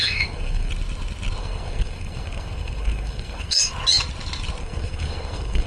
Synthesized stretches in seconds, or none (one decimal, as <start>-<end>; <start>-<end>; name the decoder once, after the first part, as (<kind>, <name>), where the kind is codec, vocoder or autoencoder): 0.0-0.7 (codec, SNAC); 1.4-3.7; 4.6-5.7